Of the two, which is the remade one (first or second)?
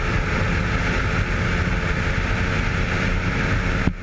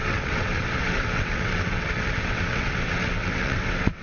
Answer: second